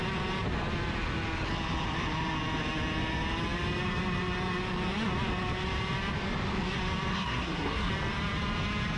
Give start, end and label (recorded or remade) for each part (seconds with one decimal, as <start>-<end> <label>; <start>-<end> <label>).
0.0-7.1 recorded; 7.1-7.9 remade; 7.9-9.0 recorded